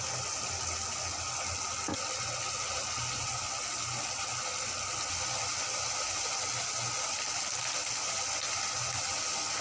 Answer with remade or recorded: recorded